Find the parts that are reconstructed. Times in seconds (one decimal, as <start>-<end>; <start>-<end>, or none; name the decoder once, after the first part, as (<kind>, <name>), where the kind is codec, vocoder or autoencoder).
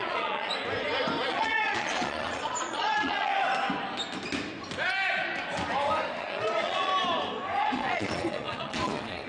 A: 0.0-0.5 (vocoder, Vocos); 1.2-3.3; 6.2-6.9; 7.6-9.3